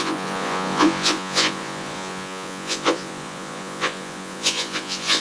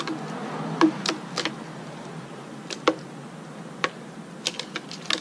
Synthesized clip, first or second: first